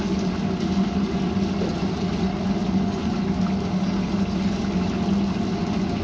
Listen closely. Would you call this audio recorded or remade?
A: recorded